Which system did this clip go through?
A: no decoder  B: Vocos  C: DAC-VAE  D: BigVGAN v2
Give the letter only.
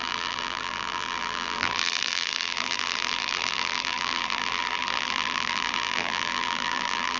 D